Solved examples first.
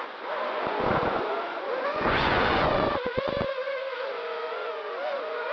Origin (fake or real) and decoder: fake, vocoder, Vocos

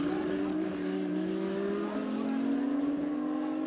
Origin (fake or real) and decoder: real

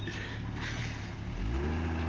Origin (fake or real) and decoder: real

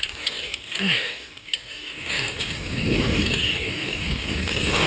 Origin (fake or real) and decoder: fake, codec, DAC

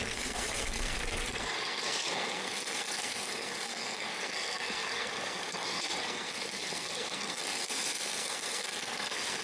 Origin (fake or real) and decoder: fake, codec, SNAC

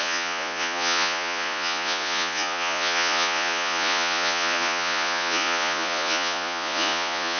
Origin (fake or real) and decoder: fake, vocoder, Vocos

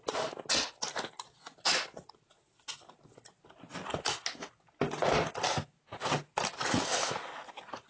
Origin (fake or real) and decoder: real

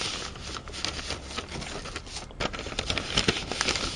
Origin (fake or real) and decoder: real